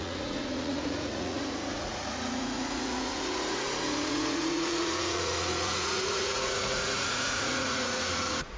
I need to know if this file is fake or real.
fake